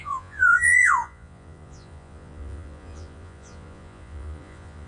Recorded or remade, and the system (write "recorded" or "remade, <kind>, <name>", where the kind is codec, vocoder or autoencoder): remade, vocoder, Vocos